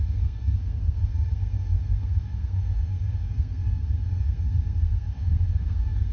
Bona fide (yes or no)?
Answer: no